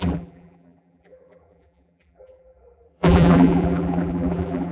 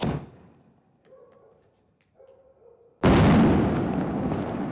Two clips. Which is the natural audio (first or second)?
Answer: second